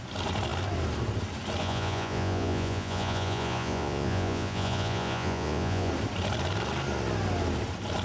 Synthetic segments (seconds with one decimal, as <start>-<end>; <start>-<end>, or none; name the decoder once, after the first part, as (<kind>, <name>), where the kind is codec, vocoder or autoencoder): 1.6-5.9 (vocoder, Vocos)